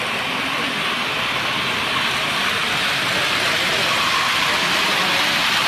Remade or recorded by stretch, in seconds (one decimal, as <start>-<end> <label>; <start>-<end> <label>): 0.0-5.7 recorded